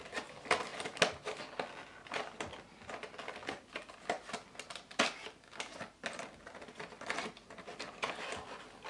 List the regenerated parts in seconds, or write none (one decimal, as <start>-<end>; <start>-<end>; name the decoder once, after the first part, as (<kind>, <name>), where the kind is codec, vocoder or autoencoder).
none